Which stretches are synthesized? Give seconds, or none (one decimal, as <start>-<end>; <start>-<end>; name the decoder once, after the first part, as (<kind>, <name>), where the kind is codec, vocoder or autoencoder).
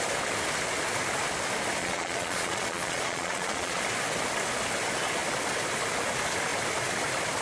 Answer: 1.8-3.8 (vocoder, Vocos)